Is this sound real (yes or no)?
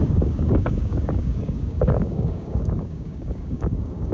no